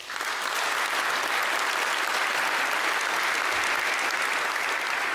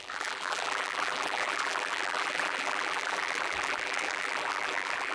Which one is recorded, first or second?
first